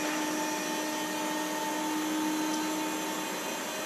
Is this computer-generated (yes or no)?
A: no